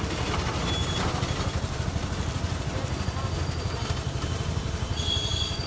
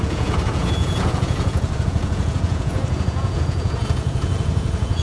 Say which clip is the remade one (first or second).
second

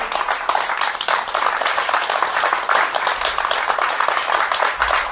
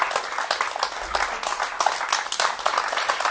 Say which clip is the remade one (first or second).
first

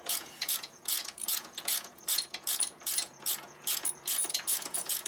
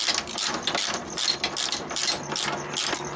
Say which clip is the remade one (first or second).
first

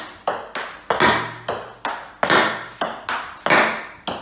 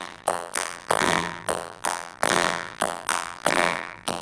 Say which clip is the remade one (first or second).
second